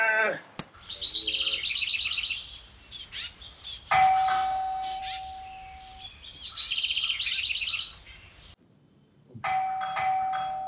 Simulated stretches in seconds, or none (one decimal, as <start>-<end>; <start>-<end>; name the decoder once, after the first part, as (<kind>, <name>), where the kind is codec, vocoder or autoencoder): 4.3-5.0 (autoencoder, DAC-VAE)